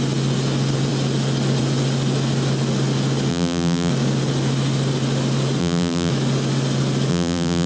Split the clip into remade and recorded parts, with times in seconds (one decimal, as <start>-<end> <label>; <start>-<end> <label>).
0.0-3.3 recorded; 3.3-3.9 remade; 3.9-5.6 recorded; 5.6-6.1 remade; 6.1-7.1 recorded; 7.1-7.7 remade